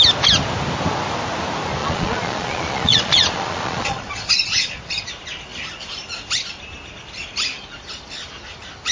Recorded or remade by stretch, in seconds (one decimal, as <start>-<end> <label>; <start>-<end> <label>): 0.0-1.8 recorded; 1.8-5.1 remade; 5.1-8.9 recorded